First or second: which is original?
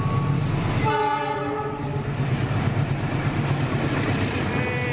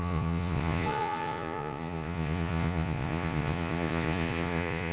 first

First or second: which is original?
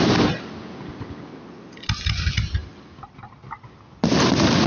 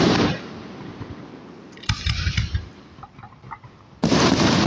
first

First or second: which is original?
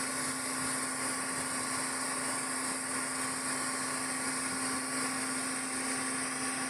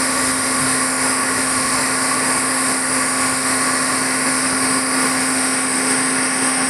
first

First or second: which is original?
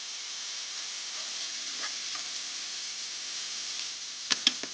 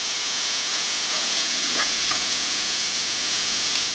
first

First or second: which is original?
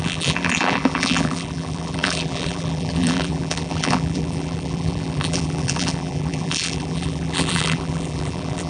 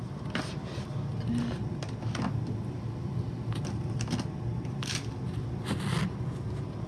second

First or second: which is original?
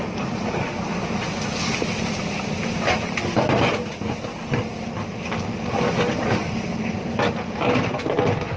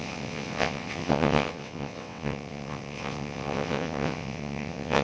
first